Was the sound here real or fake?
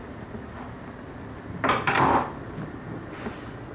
real